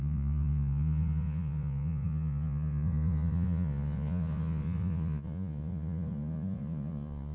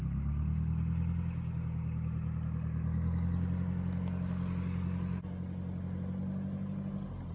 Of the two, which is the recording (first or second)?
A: second